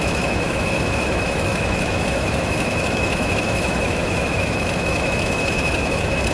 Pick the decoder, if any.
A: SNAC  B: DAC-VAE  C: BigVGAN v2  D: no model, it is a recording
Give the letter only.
B